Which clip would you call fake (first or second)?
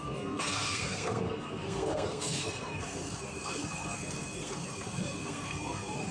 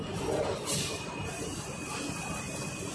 first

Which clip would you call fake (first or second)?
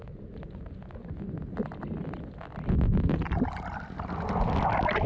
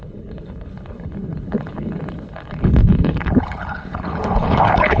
second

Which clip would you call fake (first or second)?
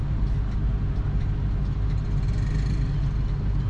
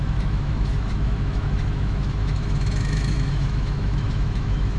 second